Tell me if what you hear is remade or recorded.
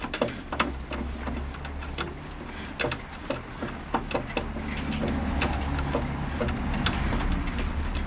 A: recorded